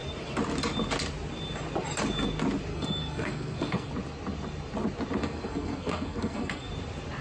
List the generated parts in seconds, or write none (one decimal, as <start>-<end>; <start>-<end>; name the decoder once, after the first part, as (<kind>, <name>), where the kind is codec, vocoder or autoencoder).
2.7-3.9 (codec, SNAC); 5.2-6.7